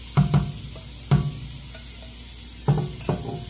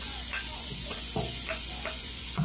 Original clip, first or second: first